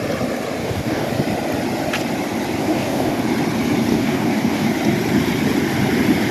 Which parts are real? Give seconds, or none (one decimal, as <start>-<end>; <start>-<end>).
0.0-0.6; 1.1-2.6; 3.2-3.9; 4.7-6.3